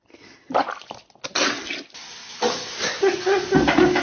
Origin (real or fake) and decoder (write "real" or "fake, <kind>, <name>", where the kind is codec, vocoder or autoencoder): real